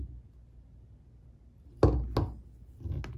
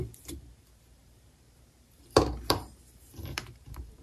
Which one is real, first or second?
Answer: first